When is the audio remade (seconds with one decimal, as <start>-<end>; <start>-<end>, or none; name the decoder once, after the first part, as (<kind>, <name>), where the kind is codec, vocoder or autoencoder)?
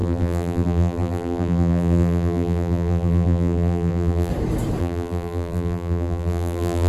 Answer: 0.0-4.3 (vocoder, BigVGAN v2); 4.8-6.9